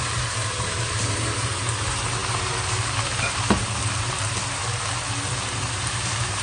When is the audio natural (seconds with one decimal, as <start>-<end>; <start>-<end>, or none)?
4.6-5.3